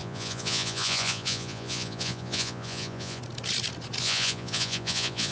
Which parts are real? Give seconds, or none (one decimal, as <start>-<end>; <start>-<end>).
3.2-4.0